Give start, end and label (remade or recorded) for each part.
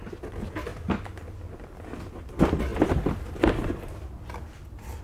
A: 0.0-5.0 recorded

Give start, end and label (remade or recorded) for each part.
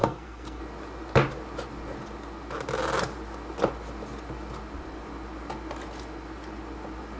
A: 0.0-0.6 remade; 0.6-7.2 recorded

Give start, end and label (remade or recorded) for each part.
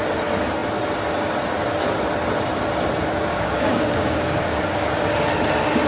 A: 0.0-3.3 recorded; 3.3-4.9 remade; 4.9-5.9 recorded